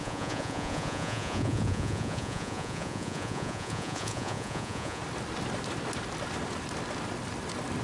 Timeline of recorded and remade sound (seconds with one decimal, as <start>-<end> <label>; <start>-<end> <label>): 0.0-5.0 remade; 5.0-7.8 recorded